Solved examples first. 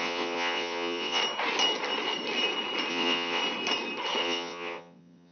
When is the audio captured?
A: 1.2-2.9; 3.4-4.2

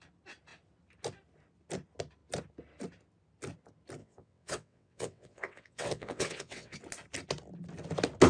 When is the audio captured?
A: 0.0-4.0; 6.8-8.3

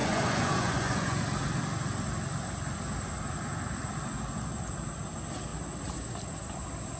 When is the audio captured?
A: 1.2-7.0

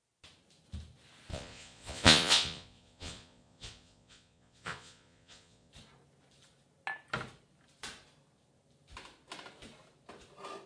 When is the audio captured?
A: 0.0-1.3; 5.7-10.7

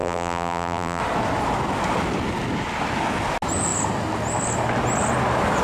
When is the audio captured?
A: 1.0-5.6

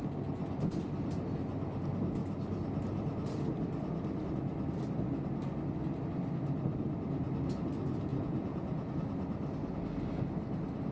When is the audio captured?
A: 0.0-8.1; 8.9-10.9

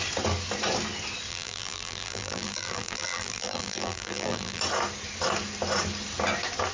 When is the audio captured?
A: 0.0-1.3; 4.6-6.7

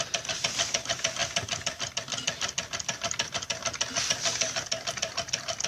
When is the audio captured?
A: 0.0-5.7